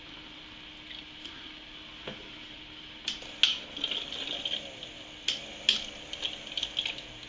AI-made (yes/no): no